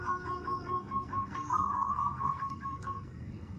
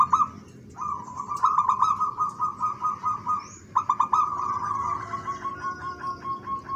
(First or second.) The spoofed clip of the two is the first